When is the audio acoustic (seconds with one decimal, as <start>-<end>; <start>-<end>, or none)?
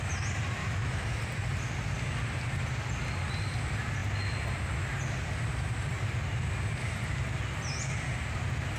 0.0-0.6; 1.2-8.8